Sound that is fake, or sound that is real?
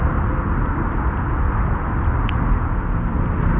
real